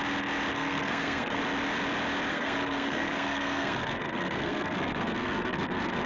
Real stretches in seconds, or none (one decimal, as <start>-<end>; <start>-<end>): 0.0-0.5; 1.4-2.3